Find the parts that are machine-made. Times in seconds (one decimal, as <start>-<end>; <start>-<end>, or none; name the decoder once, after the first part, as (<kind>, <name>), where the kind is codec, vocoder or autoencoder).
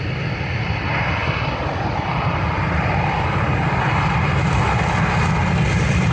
none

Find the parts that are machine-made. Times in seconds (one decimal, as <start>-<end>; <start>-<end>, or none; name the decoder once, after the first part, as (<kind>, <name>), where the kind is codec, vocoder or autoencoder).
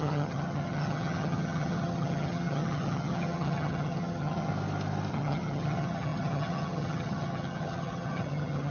0.0-4.5 (vocoder, HiFi-GAN); 5.1-8.7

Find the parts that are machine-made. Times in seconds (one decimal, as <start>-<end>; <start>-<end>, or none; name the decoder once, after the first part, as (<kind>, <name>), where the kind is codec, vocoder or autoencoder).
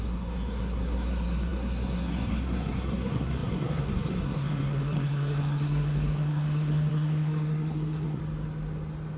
0.0-8.2 (codec, SNAC)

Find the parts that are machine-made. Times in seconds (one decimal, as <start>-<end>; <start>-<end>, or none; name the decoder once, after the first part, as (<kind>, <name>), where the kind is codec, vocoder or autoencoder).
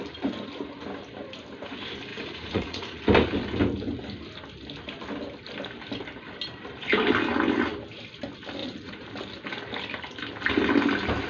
2.1-3.0 (vocoder, Vocos); 8.6-9.1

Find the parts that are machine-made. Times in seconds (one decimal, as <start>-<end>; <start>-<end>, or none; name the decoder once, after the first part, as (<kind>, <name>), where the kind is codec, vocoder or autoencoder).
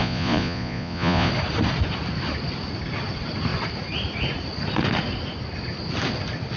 0.0-1.3 (vocoder, Vocos)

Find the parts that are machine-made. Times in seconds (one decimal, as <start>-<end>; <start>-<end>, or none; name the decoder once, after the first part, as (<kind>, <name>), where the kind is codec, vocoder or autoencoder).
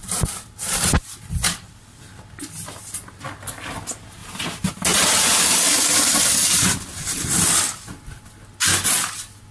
0.0-1.7 (vocoder, BigVGAN v2); 4.2-5.6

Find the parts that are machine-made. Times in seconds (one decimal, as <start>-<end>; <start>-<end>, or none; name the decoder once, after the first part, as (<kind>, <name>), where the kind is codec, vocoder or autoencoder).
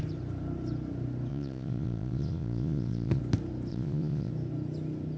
1.3-3.2 (vocoder, Vocos); 3.7-4.3